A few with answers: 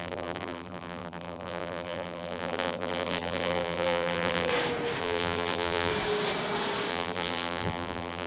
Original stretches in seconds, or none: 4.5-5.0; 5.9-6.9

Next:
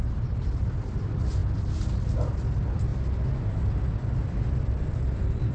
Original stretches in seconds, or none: 2.9-4.2

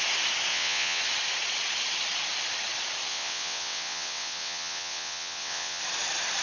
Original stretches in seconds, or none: 0.0-0.5; 1.0-3.1; 5.8-6.4

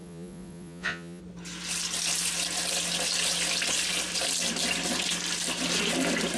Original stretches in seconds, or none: 1.2-6.4

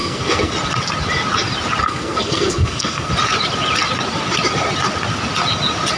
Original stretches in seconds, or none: 0.5-1.8; 3.1-6.0

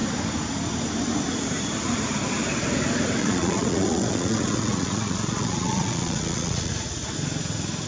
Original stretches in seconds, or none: 0.0-3.2; 6.7-7.9